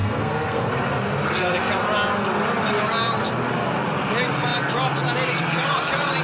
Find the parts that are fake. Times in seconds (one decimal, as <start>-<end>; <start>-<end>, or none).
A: 0.0-0.7

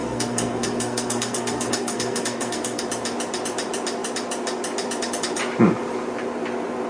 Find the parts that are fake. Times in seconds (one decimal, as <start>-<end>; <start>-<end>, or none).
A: 0.0-2.8